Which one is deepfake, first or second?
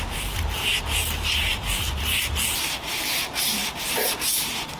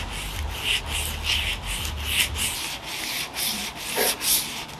first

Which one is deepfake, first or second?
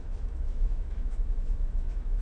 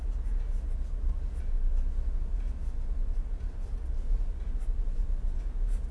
first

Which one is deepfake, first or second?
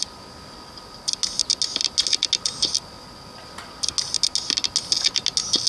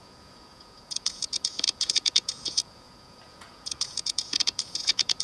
second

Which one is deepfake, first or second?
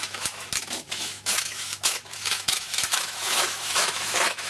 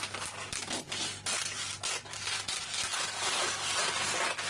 first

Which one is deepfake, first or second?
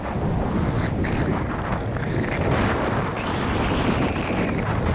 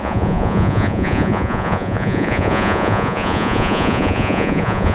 second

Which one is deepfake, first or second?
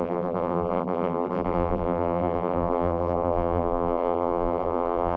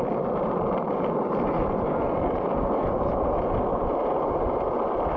first